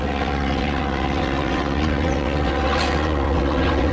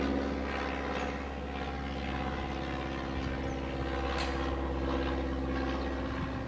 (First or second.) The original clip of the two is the second